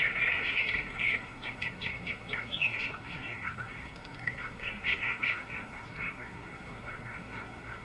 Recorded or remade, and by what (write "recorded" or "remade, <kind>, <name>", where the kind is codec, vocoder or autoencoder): remade, codec, SNAC